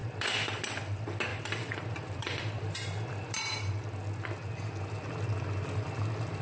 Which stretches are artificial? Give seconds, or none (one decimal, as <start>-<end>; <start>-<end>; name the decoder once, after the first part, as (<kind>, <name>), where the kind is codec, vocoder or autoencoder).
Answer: 0.0-0.7 (vocoder, BigVGAN v2); 1.3-3.8